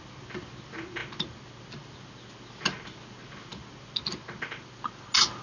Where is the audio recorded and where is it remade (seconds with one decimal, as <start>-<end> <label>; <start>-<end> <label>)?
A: 0.0-5.4 recorded